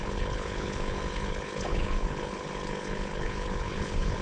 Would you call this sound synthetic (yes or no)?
yes